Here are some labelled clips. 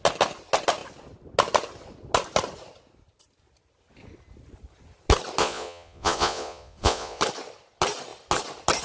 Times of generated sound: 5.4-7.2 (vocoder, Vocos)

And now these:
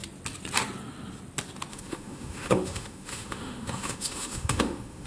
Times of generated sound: 1.7-5.1 (autoencoder, DAC-VAE)